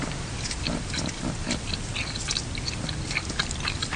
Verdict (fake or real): fake